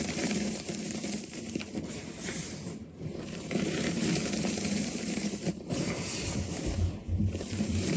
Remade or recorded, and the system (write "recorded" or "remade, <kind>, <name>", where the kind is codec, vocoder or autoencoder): remade, vocoder, BigVGAN v2